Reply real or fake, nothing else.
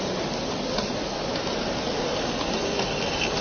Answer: real